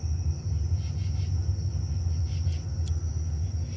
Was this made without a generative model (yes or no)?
yes